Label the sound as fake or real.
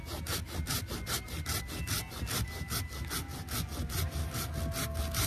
real